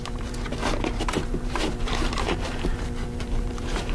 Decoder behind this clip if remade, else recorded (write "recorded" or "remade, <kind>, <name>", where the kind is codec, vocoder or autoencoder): remade, vocoder, BigVGAN v2